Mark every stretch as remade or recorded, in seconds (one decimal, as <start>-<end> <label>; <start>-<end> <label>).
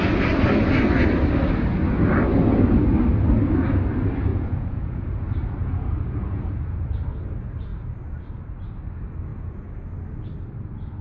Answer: 0.0-4.3 recorded; 4.3-6.9 remade; 6.9-9.3 recorded; 9.3-9.9 remade; 9.9-11.0 recorded